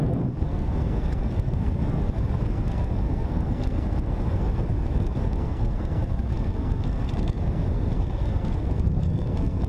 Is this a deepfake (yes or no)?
yes